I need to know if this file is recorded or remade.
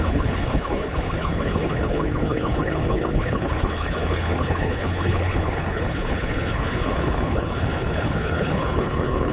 remade